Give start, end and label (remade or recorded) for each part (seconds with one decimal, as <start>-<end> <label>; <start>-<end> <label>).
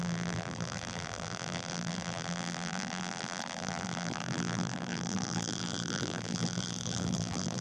0.0-7.6 remade